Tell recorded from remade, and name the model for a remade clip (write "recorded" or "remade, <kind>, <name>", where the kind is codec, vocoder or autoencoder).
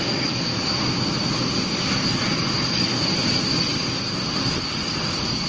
recorded